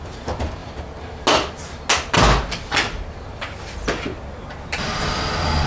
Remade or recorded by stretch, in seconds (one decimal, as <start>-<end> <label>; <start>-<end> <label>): 0.0-5.7 recorded